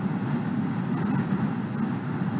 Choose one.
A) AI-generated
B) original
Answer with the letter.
B